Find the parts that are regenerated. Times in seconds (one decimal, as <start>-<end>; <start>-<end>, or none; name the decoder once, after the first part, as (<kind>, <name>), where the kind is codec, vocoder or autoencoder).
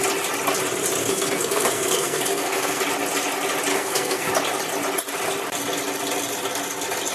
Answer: 1.0-2.8 (codec, SNAC); 3.7-4.3